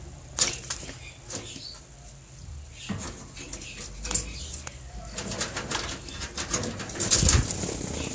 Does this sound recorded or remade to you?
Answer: recorded